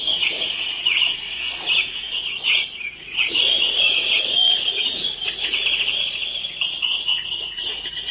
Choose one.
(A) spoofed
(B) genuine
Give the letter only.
A